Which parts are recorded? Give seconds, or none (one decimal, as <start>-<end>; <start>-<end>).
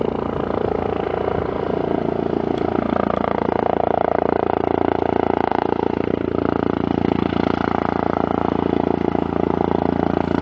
0.0-10.4